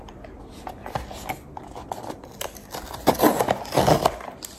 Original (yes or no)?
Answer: yes